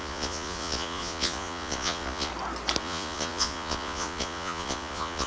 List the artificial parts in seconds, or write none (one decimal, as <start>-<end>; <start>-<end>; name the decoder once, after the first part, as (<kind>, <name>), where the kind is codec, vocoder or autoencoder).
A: 0.0-2.3 (vocoder, Vocos); 2.8-5.3